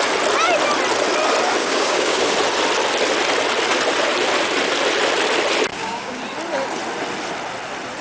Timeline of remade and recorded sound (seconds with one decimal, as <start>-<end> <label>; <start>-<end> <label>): 0.0-1.6 recorded; 1.6-2.2 remade; 2.2-5.7 recorded; 5.7-6.2 remade; 6.2-8.0 recorded

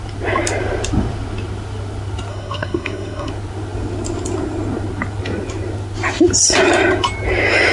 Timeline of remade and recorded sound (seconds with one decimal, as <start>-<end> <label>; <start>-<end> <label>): 0.0-2.3 recorded; 2.3-3.3 remade; 3.3-7.7 recorded

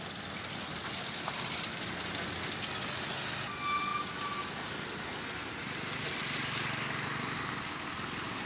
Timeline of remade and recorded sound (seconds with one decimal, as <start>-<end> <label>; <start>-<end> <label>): 0.0-8.5 recorded

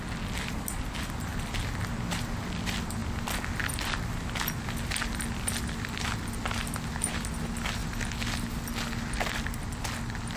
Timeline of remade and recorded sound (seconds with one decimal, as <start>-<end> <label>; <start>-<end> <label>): 0.0-10.4 recorded